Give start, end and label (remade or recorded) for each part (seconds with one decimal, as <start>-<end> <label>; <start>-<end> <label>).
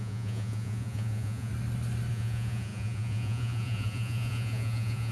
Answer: 0.0-1.5 remade; 1.5-2.1 recorded; 2.1-5.1 remade